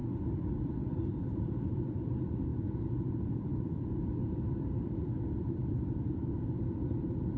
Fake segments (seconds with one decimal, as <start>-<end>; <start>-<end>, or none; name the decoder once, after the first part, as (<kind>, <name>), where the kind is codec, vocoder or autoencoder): 0.0-2.5 (vocoder, BigVGAN v2); 3.1-4.2; 4.8-7.4